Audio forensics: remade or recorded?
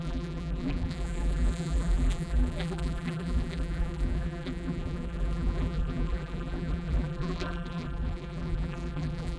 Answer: remade